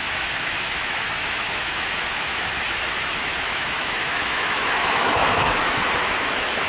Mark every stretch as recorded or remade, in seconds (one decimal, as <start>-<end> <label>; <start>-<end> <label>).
0.0-5.8 remade; 5.8-6.3 recorded; 6.3-6.7 remade